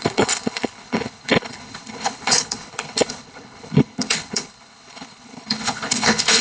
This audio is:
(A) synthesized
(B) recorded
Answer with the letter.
A